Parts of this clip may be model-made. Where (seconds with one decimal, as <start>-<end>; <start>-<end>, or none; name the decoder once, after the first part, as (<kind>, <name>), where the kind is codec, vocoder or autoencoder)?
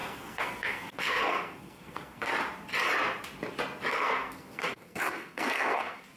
0.0-2.3 (codec, SNAC); 3.9-6.2